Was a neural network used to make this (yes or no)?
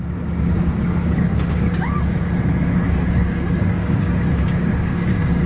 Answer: yes